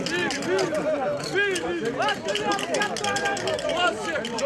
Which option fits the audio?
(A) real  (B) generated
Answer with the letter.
A